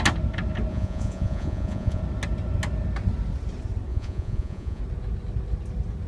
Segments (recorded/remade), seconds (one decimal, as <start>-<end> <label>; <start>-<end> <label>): 0.0-0.7 recorded; 0.7-2.0 remade; 2.0-3.9 recorded; 3.9-4.8 remade; 4.8-6.1 recorded